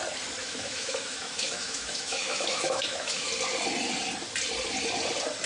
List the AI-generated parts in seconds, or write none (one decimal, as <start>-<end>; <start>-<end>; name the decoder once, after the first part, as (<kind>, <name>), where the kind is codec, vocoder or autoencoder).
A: 0.4-3.3 (autoencoder, DAC-VAE)